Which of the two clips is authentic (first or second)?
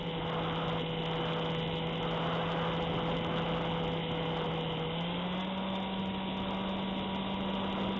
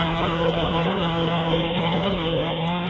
first